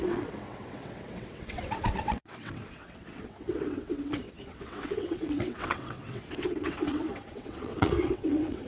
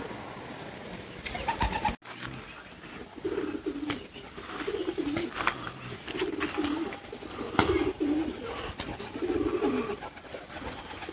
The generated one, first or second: first